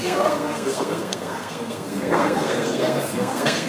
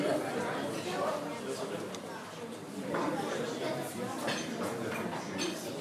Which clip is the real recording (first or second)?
second